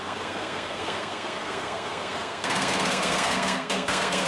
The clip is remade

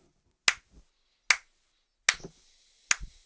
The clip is recorded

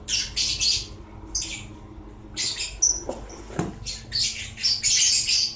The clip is recorded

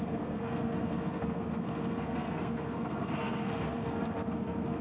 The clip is remade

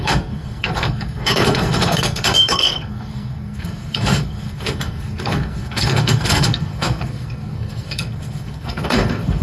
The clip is remade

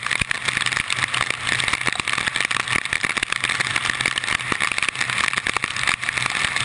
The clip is recorded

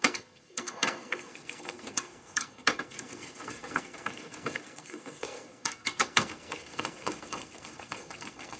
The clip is remade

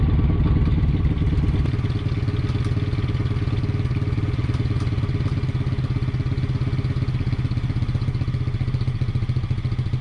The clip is recorded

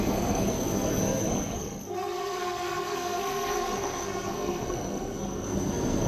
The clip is remade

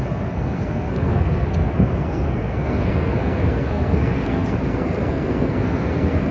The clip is remade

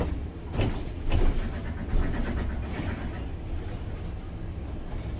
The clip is recorded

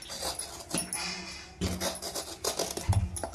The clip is recorded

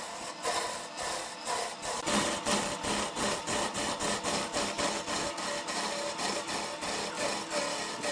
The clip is recorded